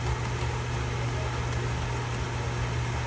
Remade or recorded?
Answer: recorded